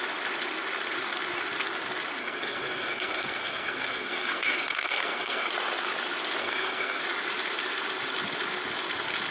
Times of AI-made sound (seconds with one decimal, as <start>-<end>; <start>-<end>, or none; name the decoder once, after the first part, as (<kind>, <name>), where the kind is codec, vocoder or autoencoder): 2.2-5.5 (codec, SNAC); 6.4-7.0